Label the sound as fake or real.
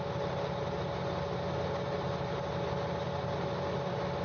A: real